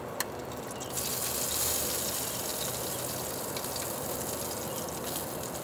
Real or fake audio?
real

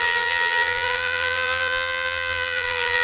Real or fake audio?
fake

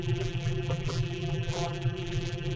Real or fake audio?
fake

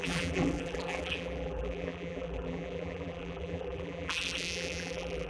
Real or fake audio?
fake